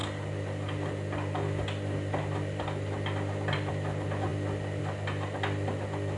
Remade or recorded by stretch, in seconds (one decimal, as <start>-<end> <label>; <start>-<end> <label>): 0.0-6.2 recorded